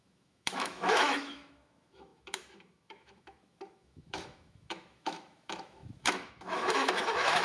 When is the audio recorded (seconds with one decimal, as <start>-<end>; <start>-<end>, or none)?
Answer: none